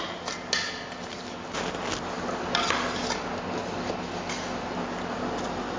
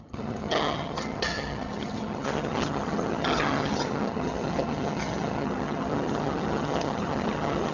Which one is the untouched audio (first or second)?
first